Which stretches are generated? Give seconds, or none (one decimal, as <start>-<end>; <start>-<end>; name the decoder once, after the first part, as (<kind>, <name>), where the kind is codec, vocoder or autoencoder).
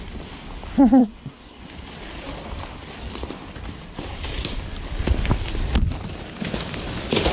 1.0-1.6 (codec, SNAC)